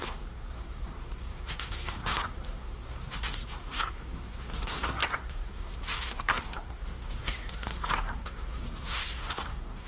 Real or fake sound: fake